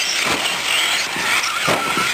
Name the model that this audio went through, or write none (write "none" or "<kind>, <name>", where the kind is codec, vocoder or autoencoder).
none